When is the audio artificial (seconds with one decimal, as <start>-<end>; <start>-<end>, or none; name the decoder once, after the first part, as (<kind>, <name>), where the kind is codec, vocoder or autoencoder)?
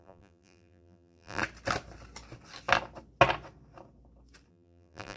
0.0-1.4 (vocoder, BigVGAN v2); 4.5-5.2